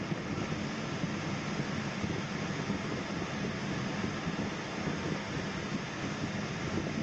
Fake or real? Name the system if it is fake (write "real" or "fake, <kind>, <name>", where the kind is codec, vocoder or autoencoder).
real